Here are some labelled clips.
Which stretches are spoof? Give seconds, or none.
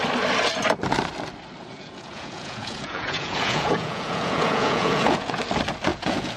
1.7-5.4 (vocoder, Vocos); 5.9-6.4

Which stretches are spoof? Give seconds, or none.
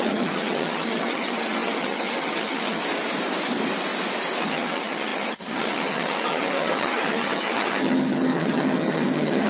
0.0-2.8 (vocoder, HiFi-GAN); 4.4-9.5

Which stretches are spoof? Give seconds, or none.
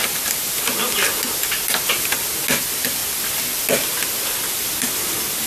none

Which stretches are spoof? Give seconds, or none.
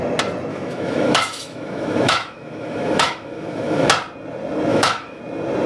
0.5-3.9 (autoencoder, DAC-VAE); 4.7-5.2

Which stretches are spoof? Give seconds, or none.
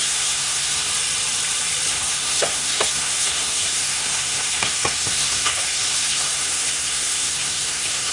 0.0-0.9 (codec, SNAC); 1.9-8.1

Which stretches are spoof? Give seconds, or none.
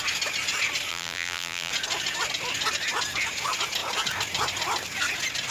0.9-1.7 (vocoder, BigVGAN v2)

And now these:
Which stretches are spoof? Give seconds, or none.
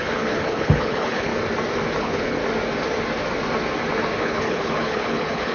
0.0-1.3 (codec, HILCodec); 2.0-2.4; 4.2-5.5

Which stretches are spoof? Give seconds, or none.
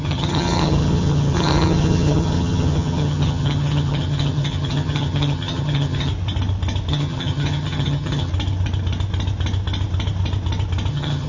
0.0-6.1 (vocoder, HiFi-GAN); 6.9-8.3; 10.9-11.3